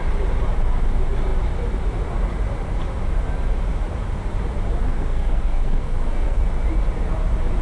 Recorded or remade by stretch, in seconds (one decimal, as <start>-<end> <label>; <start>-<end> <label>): 0.0-4.8 recorded; 4.8-6.4 remade; 6.4-7.6 recorded